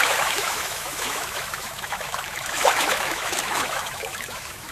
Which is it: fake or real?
fake